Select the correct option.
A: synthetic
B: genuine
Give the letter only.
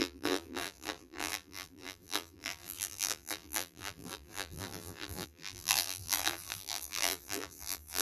A